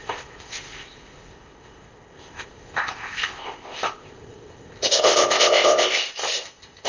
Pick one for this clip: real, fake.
fake